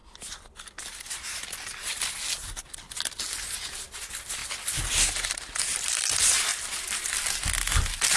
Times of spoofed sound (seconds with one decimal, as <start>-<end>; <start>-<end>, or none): none